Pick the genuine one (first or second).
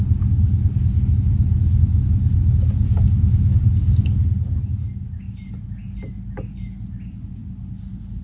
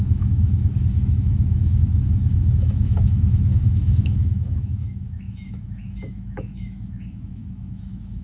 first